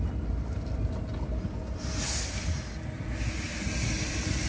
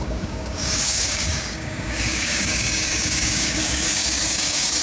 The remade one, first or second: second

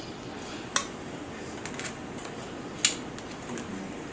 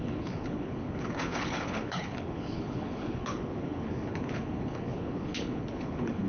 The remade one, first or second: second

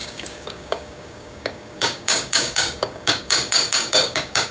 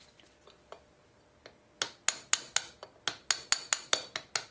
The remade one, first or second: first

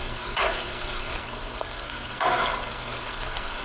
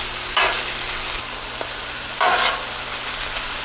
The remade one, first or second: first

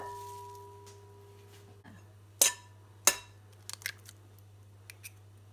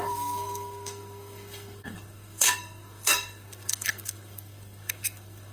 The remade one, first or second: second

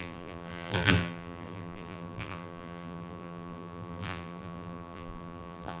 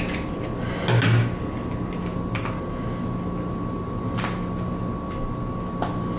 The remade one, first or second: first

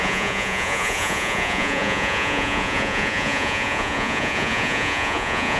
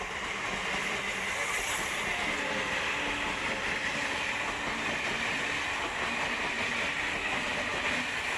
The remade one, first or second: first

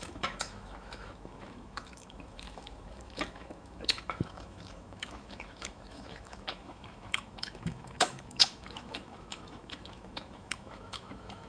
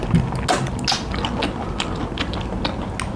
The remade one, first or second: first